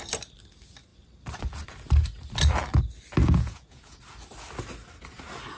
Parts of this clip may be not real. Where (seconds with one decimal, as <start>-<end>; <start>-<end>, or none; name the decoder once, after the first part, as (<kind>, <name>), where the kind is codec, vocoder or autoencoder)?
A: 3.2-4.0 (vocoder, Vocos)